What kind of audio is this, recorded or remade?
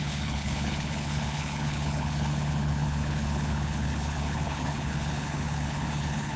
remade